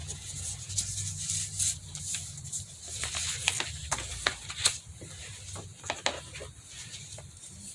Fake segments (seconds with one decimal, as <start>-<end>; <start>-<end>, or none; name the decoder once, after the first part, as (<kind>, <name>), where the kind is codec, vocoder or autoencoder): 0.0-0.7 (vocoder, Vocos)